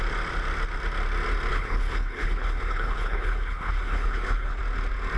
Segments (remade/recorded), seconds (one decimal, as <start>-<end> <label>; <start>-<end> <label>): 0.0-1.5 recorded; 1.5-4.6 remade; 4.6-5.2 recorded